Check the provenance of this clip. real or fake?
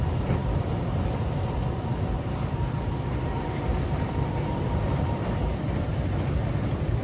fake